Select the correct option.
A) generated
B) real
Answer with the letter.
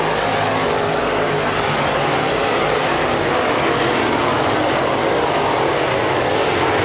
B